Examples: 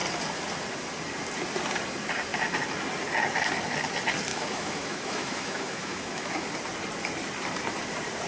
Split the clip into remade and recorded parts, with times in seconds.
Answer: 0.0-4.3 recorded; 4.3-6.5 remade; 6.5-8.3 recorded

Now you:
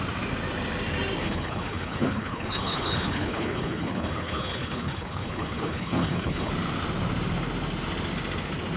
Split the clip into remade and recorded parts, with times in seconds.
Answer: 0.0-1.2 recorded; 1.2-6.5 remade; 6.5-8.8 recorded